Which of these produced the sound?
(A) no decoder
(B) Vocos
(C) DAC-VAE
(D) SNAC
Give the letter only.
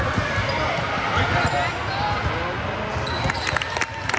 A